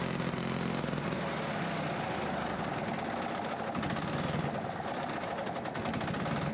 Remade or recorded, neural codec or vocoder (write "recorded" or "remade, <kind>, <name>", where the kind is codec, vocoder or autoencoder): recorded